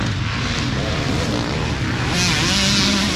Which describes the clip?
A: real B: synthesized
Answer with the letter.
A